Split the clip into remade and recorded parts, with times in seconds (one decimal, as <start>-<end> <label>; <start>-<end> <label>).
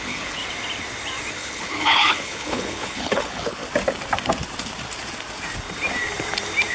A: 0.0-0.4 remade; 0.4-1.3 recorded; 1.3-3.6 remade; 3.6-6.7 recorded